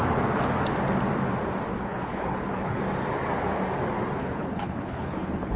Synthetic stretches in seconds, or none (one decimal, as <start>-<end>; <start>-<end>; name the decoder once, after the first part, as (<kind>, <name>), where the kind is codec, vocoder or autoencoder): 1.7-2.8 (codec, HILCodec); 4.2-5.6